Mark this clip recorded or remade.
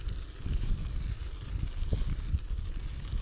recorded